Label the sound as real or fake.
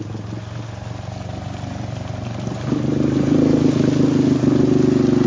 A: real